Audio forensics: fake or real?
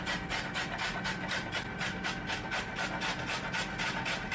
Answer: real